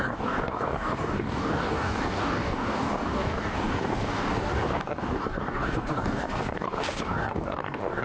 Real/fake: fake